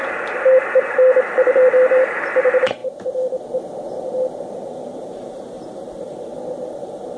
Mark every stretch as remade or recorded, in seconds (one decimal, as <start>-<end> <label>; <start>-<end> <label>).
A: 0.0-2.8 remade; 2.8-4.7 recorded; 4.7-6.3 remade; 6.3-6.8 recorded; 6.8-7.2 remade